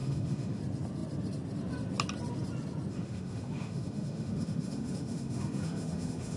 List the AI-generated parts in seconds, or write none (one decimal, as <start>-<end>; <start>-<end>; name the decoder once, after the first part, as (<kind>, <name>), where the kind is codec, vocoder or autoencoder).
0.0-0.6 (autoencoder, DAC-VAE); 2.9-6.4